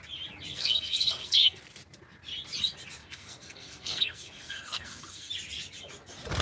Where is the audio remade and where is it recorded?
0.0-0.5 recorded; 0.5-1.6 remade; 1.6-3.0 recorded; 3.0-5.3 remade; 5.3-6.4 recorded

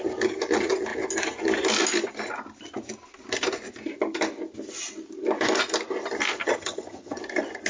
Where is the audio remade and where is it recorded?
0.0-6.4 recorded; 6.4-7.2 remade; 7.2-7.7 recorded

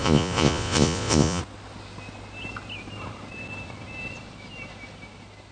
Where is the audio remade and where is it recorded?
0.0-1.4 remade; 1.4-5.5 recorded

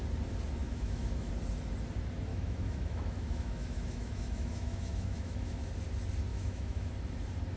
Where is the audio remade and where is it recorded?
0.0-0.6 recorded; 0.6-1.3 remade; 1.3-2.3 recorded; 2.3-5.7 remade; 5.7-6.3 recorded; 6.3-6.9 remade; 6.9-7.6 recorded

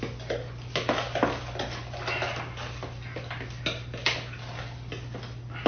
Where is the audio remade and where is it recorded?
0.0-5.7 recorded